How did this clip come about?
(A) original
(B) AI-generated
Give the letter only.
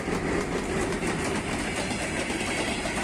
A